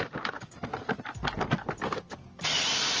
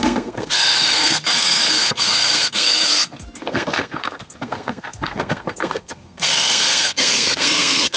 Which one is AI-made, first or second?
second